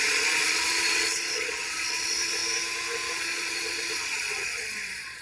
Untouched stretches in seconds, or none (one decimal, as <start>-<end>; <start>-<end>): 2.4-3.1